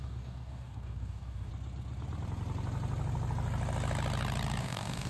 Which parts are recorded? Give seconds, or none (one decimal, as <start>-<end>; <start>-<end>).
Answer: 1.5-4.6